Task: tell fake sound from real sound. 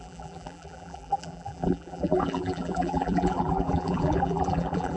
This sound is fake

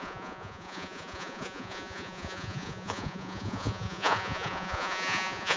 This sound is fake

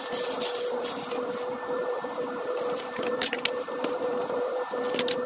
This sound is real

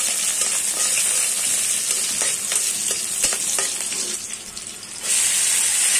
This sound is real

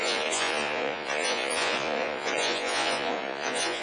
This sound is fake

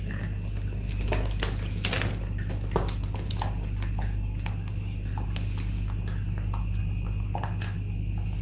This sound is real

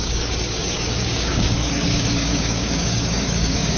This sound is fake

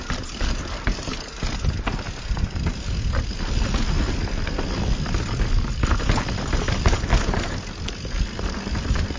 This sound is real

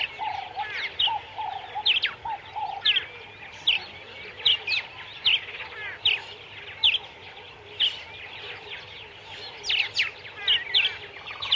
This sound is real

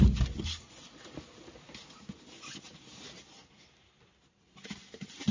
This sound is real